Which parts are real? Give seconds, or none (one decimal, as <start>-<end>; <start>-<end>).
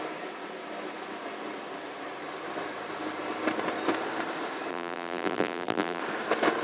0.0-4.7; 6.0-6.6